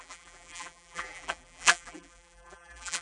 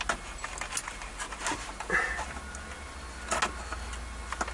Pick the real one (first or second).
second